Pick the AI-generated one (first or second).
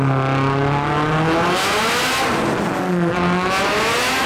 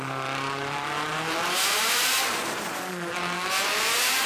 second